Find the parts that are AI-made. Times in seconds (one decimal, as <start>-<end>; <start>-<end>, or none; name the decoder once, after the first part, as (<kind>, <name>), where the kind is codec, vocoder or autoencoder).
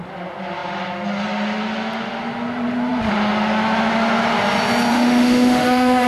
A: 4.9-6.1 (autoencoder, DAC-VAE)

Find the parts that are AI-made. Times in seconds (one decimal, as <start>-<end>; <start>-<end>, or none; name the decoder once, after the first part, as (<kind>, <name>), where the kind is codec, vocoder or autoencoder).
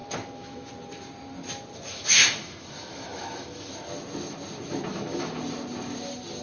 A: 0.0-0.7 (autoencoder, DAC-VAE); 1.9-3.7; 4.9-5.4